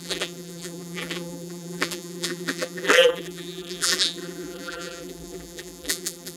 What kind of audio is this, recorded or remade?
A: remade